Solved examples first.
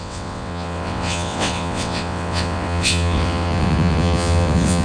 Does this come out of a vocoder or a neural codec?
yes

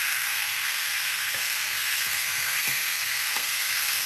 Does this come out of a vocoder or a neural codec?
yes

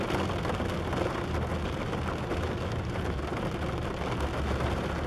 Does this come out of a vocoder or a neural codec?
no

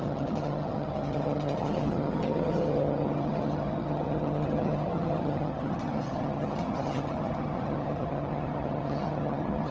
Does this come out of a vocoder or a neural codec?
yes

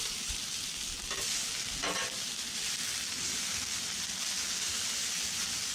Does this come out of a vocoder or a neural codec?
no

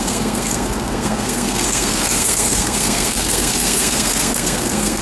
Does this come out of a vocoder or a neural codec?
yes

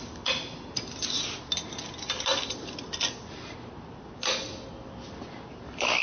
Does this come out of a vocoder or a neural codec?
no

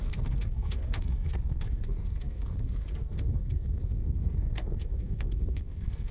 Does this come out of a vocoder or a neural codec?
yes